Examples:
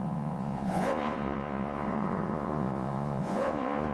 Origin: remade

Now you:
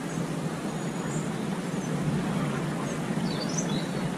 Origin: recorded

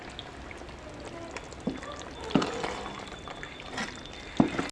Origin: recorded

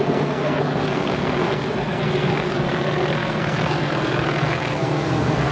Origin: remade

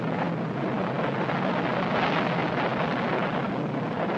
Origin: recorded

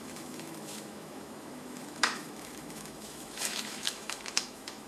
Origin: remade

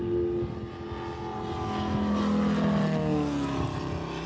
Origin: recorded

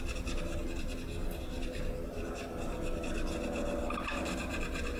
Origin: recorded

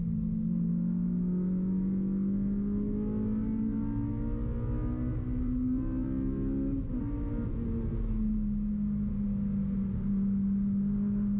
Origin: recorded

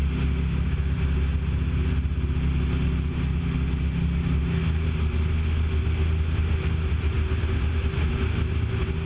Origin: recorded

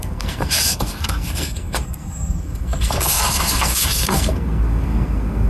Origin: remade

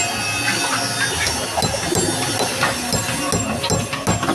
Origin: recorded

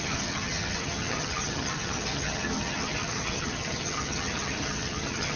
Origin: remade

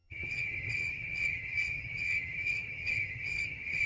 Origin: remade